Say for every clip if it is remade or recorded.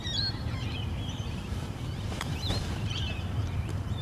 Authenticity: remade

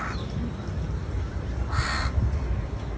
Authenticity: recorded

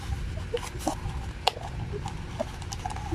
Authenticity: recorded